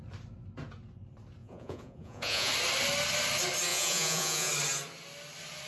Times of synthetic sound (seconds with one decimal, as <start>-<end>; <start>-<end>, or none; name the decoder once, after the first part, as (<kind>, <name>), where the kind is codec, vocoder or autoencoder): 1.4-2.5 (vocoder, Vocos); 3.7-4.5